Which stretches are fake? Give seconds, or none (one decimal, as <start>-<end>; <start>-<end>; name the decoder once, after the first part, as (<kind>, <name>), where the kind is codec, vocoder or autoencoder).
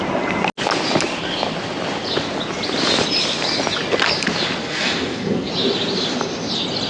4.6-5.5 (codec, SNAC)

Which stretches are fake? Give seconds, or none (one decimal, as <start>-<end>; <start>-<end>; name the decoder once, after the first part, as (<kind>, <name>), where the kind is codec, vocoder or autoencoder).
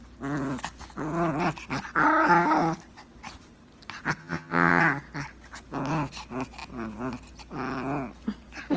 4.2-4.8 (vocoder, HiFi-GAN)